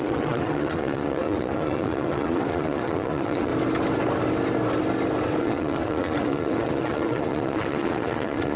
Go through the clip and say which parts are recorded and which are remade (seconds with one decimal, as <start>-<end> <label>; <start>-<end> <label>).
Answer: 0.0-3.5 remade; 3.5-5.4 recorded; 5.4-8.6 remade